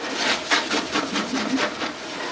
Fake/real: real